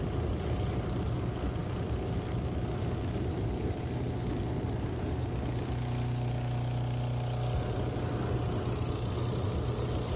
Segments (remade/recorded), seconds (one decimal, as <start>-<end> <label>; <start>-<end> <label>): 0.0-10.2 recorded